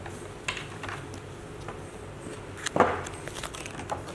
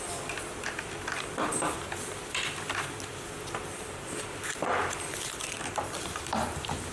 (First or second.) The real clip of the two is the first